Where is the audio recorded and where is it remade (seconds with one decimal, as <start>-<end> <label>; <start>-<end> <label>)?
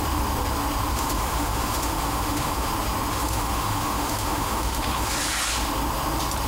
0.0-0.9 recorded; 0.9-2.7 remade; 2.7-3.1 recorded; 3.1-5.2 remade; 5.2-6.5 recorded